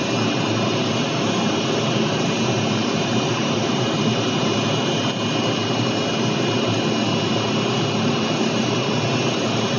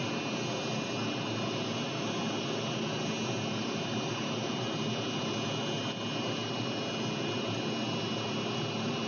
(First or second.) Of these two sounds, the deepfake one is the first